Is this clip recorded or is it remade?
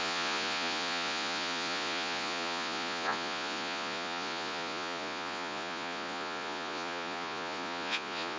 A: remade